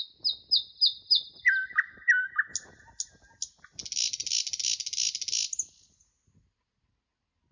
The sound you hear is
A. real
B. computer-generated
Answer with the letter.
A